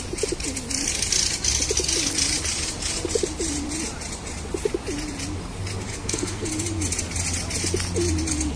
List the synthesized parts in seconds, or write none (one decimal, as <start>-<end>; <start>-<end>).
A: 5.9-6.5